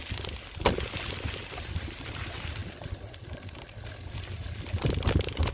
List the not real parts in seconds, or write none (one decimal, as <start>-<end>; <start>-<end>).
none